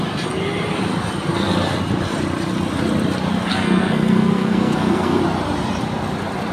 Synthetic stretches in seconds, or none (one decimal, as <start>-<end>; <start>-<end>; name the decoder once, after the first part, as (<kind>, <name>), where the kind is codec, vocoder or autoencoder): 3.5-5.2 (codec, SNAC)